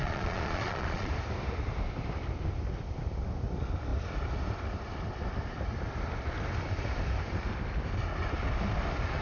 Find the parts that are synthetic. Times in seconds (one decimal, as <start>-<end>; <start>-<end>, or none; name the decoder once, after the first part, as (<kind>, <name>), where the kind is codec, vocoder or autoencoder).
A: 0.0-1.1 (vocoder, Vocos)